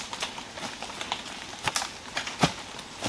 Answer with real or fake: real